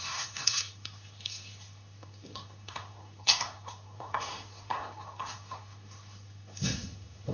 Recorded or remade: remade